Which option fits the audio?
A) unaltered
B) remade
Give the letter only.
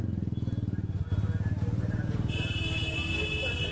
A